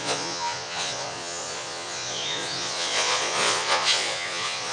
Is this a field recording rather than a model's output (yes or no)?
no